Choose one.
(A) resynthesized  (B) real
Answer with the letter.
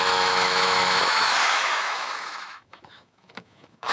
A